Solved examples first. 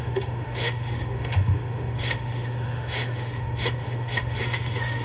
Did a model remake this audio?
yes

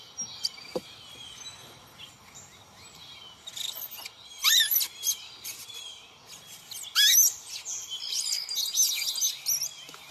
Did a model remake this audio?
no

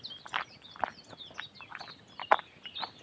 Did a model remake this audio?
no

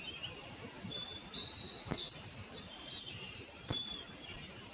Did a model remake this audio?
yes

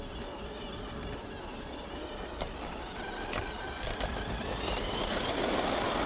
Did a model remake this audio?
no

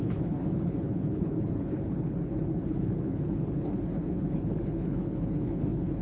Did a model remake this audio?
yes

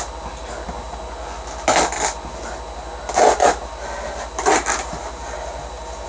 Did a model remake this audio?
no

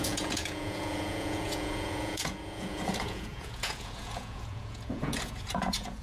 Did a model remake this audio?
yes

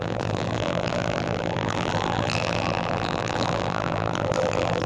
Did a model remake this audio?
yes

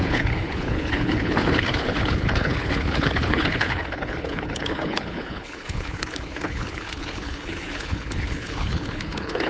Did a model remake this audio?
yes